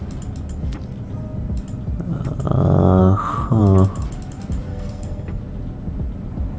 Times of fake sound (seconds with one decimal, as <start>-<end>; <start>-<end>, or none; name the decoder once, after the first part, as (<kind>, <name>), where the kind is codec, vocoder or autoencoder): 3.0-3.6 (codec, SNAC); 4.7-5.4

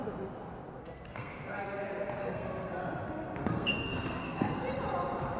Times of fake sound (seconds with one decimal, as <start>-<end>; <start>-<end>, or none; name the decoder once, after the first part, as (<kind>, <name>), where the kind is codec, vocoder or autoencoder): 0.8-1.6 (codec, SNAC); 2.2-2.8; 3.4-4.5

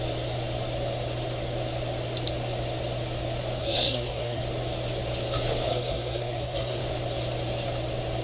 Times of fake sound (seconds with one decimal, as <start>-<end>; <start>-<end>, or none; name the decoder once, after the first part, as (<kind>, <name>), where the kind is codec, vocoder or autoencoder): 3.6-4.4 (codec, SNAC); 5.7-6.8

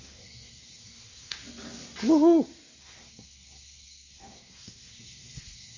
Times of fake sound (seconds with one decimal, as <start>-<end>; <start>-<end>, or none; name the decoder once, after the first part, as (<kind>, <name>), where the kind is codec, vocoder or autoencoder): 0.0-1.4 (codec, SNAC); 2.8-5.8

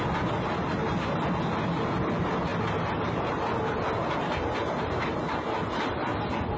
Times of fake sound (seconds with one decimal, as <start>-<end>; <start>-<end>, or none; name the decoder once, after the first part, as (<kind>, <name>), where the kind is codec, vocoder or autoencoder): none

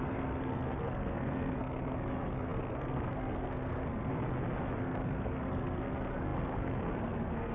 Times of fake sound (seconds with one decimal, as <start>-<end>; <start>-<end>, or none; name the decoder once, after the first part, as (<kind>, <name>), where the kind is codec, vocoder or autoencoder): 0.0-4.1 (codec, SNAC); 4.8-7.5

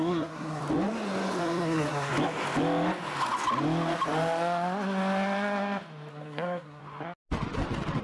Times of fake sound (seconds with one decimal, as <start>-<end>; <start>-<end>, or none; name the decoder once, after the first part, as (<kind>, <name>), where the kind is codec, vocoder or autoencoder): 0.0-0.6 (codec, SNAC); 1.4-2.1; 6.1-6.8